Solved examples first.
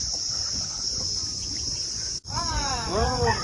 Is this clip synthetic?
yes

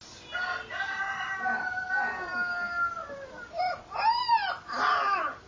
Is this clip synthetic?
no